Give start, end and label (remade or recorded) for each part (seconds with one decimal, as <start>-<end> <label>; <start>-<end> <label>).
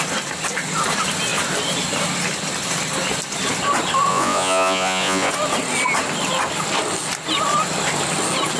0.0-4.1 recorded; 4.1-5.3 remade; 5.3-8.6 recorded